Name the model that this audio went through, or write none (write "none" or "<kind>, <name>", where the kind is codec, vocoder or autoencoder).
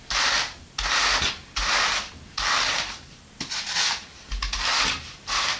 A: none